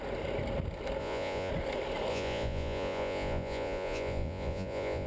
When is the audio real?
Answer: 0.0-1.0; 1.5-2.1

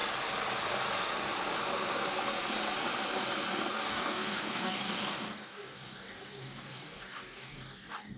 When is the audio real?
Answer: 0.0-3.7

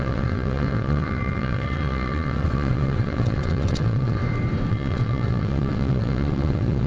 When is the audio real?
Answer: 4.2-4.7